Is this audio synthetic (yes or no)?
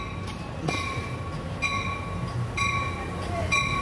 no